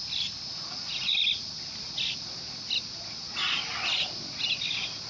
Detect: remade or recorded recorded